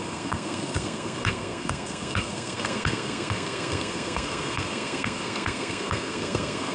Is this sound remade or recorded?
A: remade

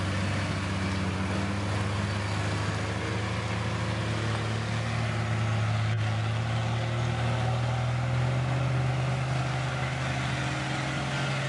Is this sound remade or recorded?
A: recorded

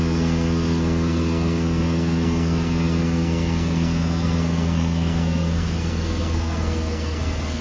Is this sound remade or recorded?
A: remade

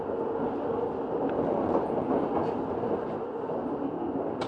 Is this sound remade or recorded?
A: recorded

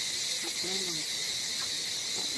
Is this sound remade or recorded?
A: recorded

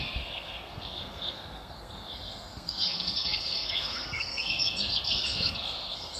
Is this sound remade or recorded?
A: remade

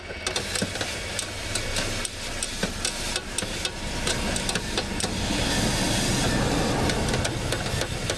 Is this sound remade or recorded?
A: recorded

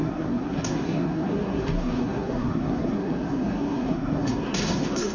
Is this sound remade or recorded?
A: remade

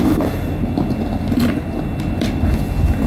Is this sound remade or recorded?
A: recorded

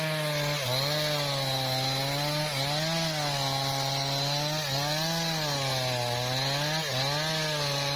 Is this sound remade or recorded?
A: recorded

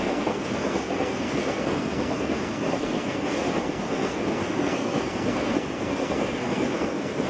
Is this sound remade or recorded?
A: remade